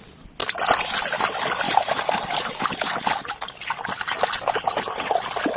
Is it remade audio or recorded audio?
recorded